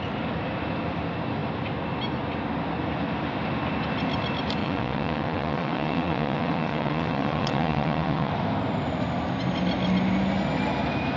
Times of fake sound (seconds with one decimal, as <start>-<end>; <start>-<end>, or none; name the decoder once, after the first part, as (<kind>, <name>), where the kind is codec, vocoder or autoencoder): 4.6-8.3 (vocoder, WaveNeXt)